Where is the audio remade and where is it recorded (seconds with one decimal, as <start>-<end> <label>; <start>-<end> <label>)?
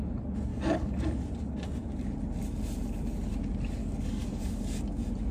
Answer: 0.0-0.5 recorded; 0.5-1.2 remade; 1.2-3.8 recorded; 3.8-4.6 remade; 4.6-5.3 recorded